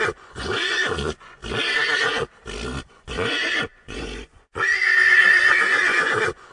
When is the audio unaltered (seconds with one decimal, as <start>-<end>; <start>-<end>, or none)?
1.4-2.8